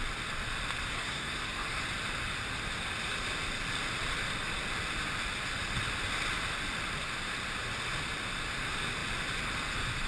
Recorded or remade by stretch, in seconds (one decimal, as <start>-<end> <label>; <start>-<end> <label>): 0.0-0.9 recorded; 0.9-1.8 remade; 1.8-10.1 recorded